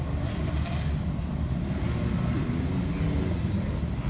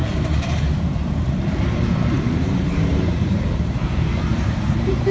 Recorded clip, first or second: first